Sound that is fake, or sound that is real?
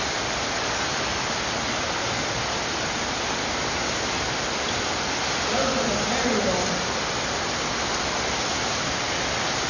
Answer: real